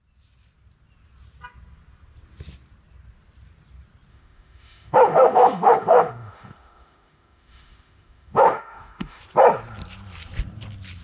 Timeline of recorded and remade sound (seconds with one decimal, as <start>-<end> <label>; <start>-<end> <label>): 0.0-4.1 recorded; 4.1-9.2 remade; 9.2-11.0 recorded